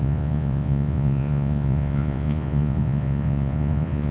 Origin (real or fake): fake